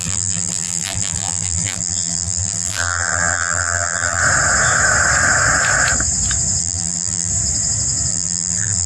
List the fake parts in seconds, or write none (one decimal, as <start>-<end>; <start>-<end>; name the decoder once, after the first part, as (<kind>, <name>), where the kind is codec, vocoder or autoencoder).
0.0-4.2 (vocoder, BigVGAN v2); 6.6-7.3; 8.1-8.9